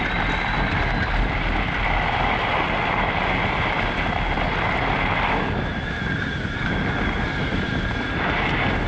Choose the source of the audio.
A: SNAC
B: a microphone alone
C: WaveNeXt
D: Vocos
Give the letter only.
B